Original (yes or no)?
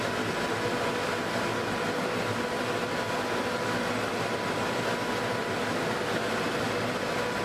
yes